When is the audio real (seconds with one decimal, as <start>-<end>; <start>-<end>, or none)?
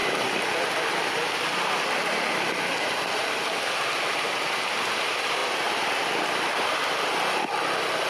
0.0-8.1